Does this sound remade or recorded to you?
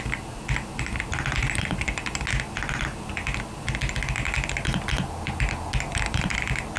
recorded